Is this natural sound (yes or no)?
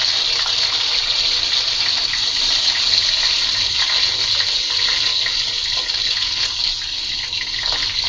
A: yes